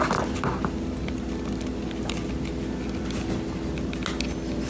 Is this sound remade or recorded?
recorded